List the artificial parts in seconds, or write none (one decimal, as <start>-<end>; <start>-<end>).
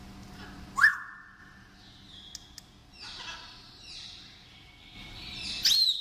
none